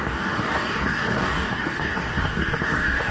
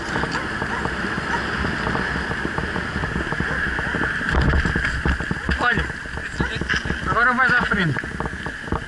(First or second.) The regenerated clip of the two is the first